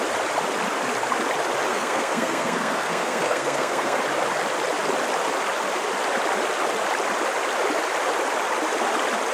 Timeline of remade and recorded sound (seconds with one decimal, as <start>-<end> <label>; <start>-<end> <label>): 0.0-1.7 recorded; 1.7-4.0 remade; 4.0-9.3 recorded